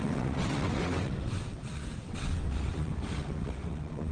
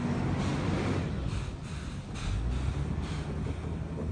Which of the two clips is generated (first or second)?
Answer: first